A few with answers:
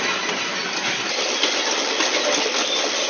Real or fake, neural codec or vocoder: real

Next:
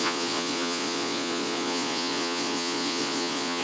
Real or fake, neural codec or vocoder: fake, vocoder, Vocos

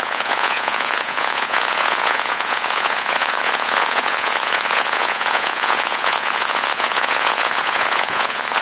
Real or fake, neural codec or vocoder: fake, vocoder, Vocos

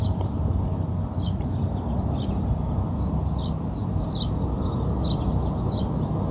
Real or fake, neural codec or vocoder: real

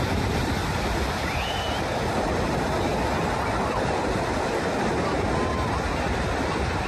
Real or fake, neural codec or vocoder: real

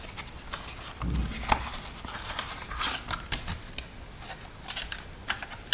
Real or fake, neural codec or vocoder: real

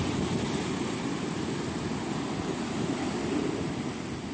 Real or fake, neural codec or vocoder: real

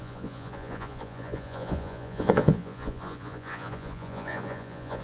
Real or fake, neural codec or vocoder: fake, vocoder, Vocos